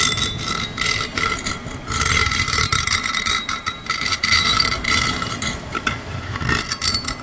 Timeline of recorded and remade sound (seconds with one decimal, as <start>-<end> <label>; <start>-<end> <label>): 0.0-2.2 recorded; 2.2-6.5 remade; 6.5-7.2 recorded